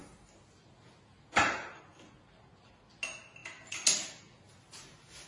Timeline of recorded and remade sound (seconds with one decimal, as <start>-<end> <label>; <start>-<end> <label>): 0.0-5.3 recorded